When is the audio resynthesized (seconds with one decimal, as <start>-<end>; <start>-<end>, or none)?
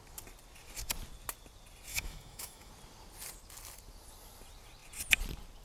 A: 1.9-2.7